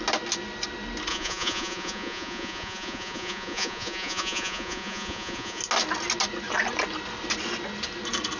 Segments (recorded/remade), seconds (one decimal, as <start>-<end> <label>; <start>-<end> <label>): 0.0-1.1 recorded; 1.1-5.6 remade; 5.6-8.4 recorded